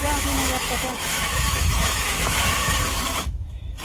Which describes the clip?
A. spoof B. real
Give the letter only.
A